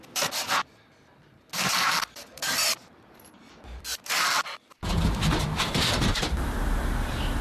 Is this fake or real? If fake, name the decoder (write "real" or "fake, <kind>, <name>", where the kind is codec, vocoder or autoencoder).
real